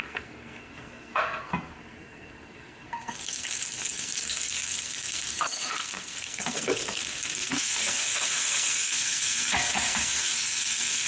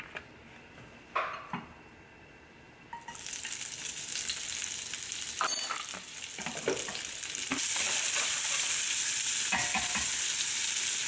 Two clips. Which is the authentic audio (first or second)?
second